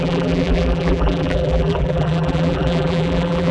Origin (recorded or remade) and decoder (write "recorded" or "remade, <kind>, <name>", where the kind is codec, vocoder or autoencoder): remade, vocoder, BigVGAN v2